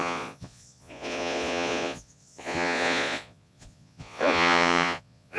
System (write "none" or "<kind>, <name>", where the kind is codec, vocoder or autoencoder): vocoder, Vocos